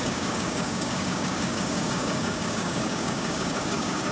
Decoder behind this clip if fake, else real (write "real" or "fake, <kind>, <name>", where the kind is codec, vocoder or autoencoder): fake, codec, DAC